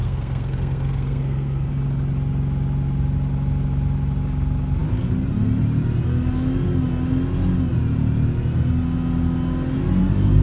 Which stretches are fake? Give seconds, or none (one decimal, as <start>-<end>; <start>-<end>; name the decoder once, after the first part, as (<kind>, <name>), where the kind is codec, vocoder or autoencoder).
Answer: 0.0-1.7 (codec, SNAC)